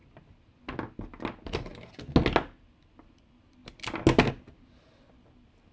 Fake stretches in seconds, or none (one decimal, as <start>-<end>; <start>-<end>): none